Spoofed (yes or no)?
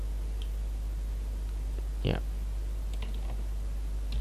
no